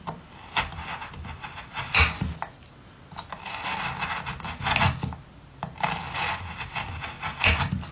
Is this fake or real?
real